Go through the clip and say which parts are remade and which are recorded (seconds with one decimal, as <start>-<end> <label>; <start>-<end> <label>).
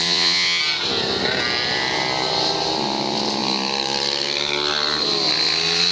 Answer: 0.0-0.6 remade; 0.6-5.9 recorded